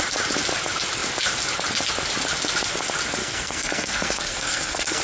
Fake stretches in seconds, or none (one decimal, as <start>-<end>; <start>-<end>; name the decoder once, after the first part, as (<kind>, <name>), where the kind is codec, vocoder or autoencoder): 3.2-5.0 (codec, SNAC)